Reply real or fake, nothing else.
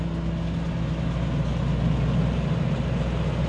real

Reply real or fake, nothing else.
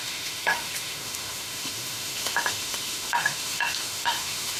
fake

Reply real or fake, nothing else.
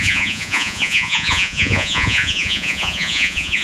fake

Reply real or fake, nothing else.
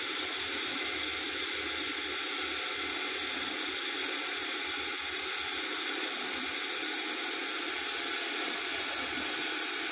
real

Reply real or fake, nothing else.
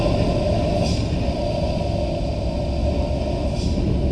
real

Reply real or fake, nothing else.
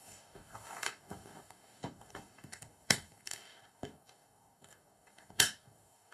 fake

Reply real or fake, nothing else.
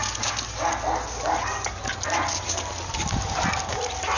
real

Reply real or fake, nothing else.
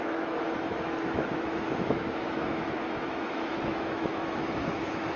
fake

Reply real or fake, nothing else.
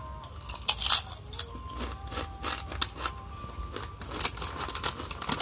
real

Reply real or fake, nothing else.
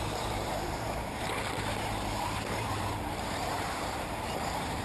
fake